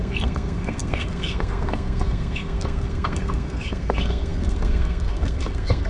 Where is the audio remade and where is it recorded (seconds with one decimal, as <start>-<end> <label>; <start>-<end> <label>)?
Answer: 0.0-5.9 remade